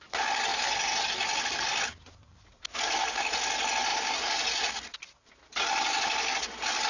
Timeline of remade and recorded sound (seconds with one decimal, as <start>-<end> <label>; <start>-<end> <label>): 0.0-6.9 recorded